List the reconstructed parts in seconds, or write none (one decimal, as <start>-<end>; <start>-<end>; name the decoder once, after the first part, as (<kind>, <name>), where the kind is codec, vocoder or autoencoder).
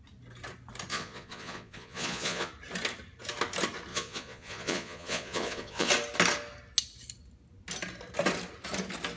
0.9-2.5 (vocoder, Vocos); 3.9-5.9